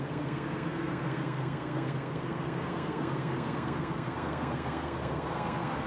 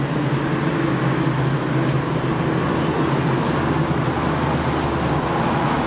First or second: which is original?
second